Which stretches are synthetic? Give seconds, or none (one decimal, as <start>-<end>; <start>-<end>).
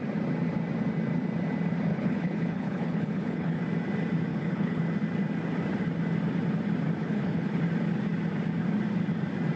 1.9-3.6; 4.3-4.8; 7.0-7.6